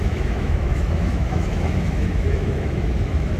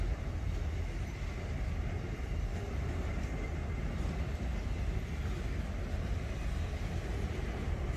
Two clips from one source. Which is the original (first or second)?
second